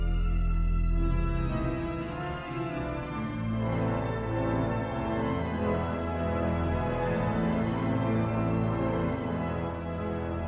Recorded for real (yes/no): yes